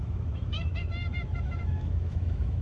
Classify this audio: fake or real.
fake